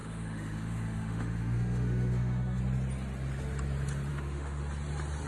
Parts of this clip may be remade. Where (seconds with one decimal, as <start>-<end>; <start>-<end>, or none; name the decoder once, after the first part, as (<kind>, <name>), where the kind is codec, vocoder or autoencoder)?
0.0-2.6 (autoencoder, DAC-VAE); 4.1-4.6